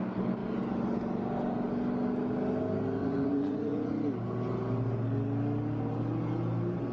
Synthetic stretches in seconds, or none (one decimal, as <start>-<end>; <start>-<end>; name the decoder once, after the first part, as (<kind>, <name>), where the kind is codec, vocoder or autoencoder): 3.0-3.9 (vocoder, Vocos)